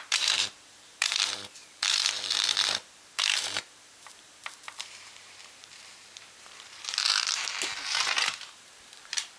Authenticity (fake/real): fake